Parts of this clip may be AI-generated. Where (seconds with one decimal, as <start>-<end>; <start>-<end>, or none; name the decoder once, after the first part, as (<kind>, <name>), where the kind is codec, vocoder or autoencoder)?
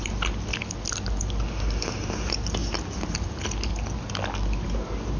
none